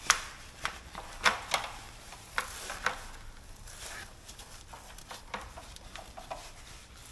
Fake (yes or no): no